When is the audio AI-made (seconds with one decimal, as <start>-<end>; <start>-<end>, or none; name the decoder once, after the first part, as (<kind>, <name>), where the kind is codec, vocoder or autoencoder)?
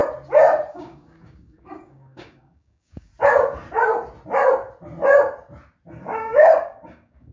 0.7-3.1 (codec, DAC); 6.0-7.3